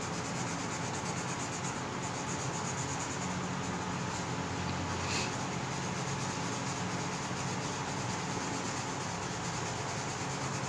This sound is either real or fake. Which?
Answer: real